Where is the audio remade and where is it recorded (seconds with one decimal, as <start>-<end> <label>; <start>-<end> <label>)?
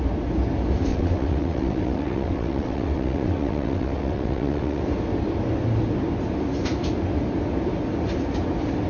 0.0-0.9 recorded; 0.9-4.8 remade; 4.8-8.9 recorded